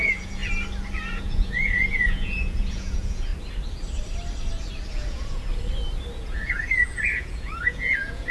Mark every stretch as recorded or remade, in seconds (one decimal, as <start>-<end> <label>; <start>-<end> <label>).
0.0-0.4 remade; 0.4-1.1 recorded; 1.1-3.3 remade; 3.3-4.9 recorded; 4.9-5.5 remade; 5.5-6.2 recorded; 6.2-8.3 remade